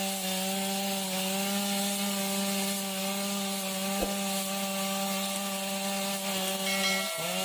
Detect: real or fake real